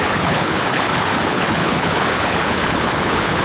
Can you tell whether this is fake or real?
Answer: fake